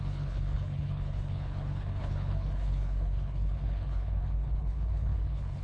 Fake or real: fake